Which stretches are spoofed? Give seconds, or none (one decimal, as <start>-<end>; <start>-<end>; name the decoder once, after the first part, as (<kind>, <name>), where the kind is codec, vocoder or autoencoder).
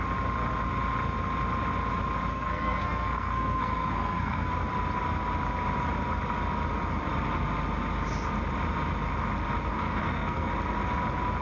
2.3-4.5 (codec, SNAC); 9.7-10.5